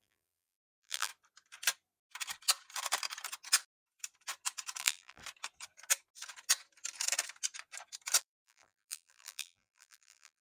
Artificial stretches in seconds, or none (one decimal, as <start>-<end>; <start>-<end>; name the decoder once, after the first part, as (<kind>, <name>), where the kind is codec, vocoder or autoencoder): 0.0-1.1 (vocoder, BigVGAN v2); 4.8-5.2; 8.2-10.4